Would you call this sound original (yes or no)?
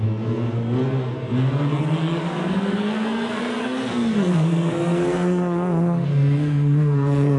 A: no